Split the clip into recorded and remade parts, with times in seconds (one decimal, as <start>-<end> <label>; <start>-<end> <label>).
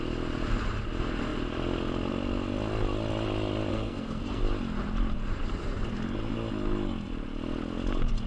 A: 0.0-3.7 recorded; 3.7-4.4 remade; 4.4-8.3 recorded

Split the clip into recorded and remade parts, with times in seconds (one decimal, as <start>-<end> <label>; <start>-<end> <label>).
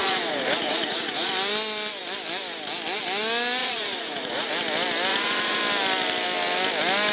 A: 0.0-1.3 remade; 1.3-3.6 recorded; 3.6-4.5 remade; 4.5-5.1 recorded; 5.1-5.6 remade; 5.6-7.1 recorded